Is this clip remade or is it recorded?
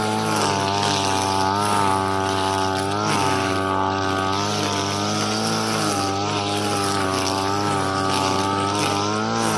recorded